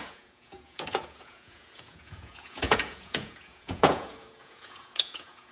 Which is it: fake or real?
fake